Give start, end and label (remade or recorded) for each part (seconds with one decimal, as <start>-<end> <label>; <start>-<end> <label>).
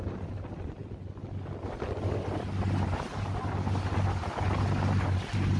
0.0-5.6 recorded